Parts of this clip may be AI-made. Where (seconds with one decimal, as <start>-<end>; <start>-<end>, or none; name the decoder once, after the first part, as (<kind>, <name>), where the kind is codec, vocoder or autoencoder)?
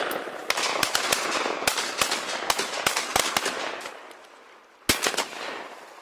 0.4-1.7 (vocoder, BigVGAN v2)